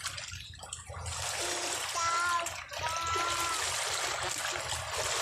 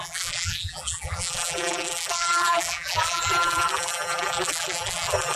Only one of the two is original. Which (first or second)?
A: first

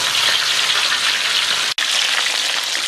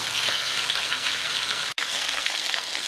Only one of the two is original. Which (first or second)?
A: first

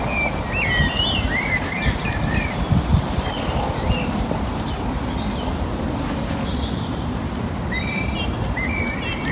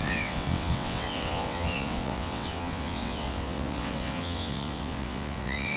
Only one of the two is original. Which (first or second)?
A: first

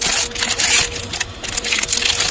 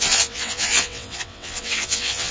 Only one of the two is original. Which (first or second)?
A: first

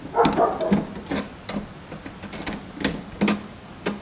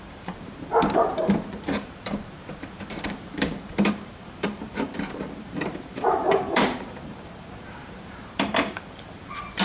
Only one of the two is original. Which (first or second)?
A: first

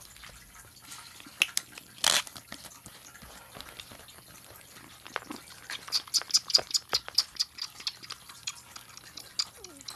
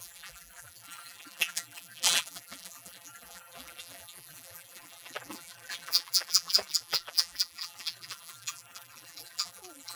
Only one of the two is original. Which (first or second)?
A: first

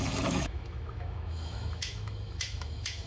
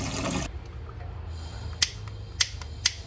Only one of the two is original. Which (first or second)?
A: second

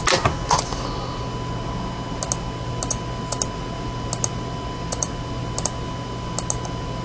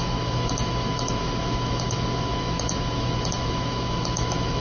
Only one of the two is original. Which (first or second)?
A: first